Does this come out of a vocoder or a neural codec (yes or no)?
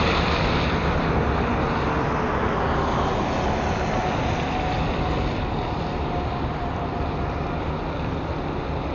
no